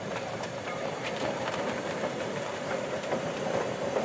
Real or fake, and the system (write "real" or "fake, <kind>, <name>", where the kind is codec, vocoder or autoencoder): fake, vocoder, BigVGAN v2